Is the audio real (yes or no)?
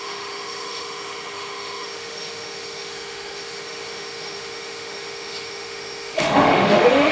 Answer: no